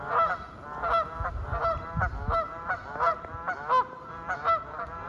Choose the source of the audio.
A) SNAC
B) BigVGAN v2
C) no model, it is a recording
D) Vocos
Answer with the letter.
C